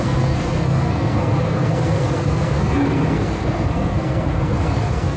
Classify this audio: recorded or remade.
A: remade